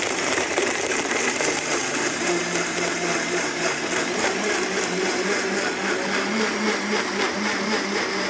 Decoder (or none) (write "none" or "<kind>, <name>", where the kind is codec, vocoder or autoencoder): vocoder, BigVGAN v2